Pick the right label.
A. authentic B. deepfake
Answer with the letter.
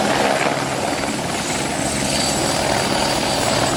A